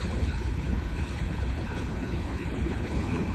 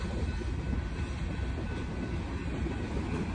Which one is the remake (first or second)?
first